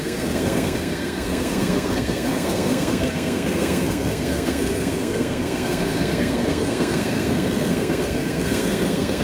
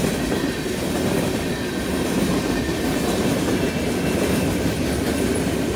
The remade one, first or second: first